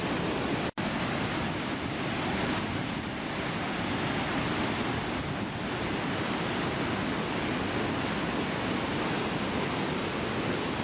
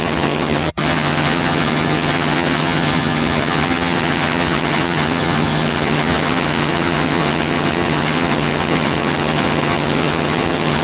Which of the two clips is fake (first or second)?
second